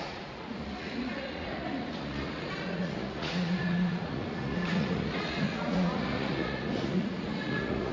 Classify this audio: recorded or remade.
remade